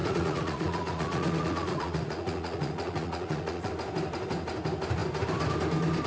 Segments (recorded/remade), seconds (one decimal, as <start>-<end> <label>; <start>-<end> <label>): 0.0-3.7 remade; 3.7-6.1 recorded